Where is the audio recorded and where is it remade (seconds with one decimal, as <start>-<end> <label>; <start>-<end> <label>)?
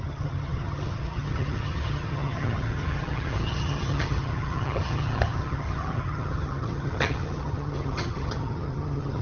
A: 0.0-9.2 remade